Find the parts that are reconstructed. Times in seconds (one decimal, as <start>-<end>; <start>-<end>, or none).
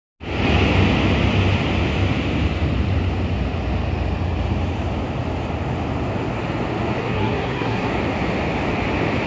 7.0-7.9